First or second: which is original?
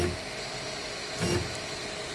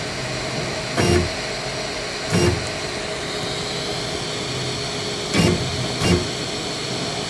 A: second